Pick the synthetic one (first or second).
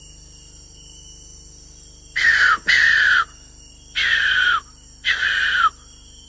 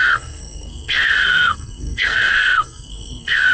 second